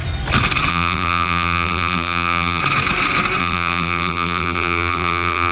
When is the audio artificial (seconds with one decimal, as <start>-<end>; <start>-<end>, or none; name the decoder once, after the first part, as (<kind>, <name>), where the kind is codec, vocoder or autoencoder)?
0.7-2.6 (vocoder, BigVGAN v2); 3.4-5.5